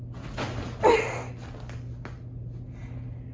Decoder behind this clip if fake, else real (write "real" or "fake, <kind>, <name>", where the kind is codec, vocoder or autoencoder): real